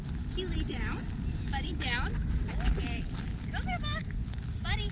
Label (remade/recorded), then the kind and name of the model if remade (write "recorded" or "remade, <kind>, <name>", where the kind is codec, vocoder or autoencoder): recorded